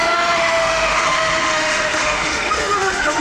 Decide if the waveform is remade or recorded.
remade